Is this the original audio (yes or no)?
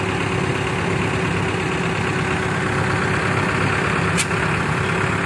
yes